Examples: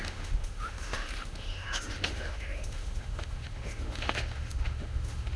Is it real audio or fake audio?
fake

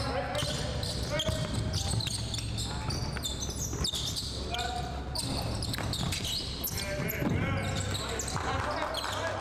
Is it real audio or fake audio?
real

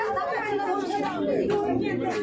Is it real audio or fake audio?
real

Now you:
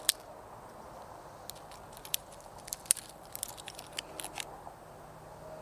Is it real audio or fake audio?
real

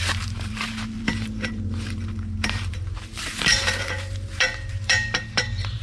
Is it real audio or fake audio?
fake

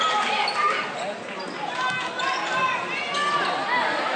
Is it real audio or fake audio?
real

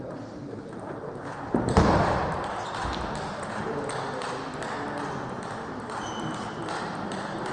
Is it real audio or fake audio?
real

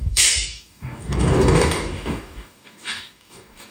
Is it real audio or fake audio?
fake